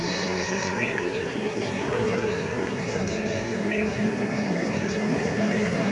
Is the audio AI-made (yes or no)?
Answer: yes